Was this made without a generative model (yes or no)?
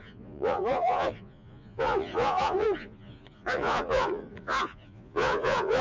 no